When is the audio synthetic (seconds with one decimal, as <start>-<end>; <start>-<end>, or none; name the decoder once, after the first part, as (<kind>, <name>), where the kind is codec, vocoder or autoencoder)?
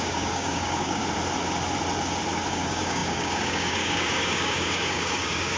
0.0-1.0 (codec, DAC); 2.5-5.6